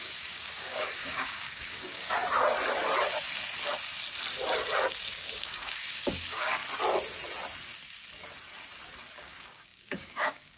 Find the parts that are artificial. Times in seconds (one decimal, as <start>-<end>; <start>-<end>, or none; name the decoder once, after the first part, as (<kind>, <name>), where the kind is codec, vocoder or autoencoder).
0.0-2.2 (codec, DAC); 5.1-6.6; 9.1-10.6